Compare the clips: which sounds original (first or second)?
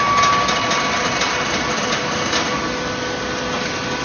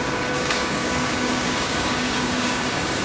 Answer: first